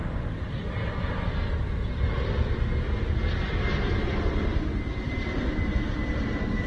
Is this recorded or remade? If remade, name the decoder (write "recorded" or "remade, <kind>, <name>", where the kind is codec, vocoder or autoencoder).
recorded